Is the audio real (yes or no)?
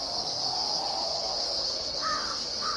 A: no